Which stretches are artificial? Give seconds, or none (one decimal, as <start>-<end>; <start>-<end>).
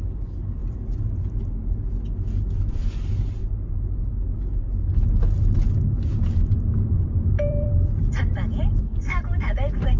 0.0-0.6; 2.7-3.4; 7.3-10.0